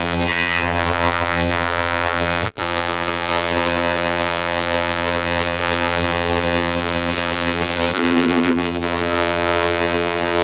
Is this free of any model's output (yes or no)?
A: no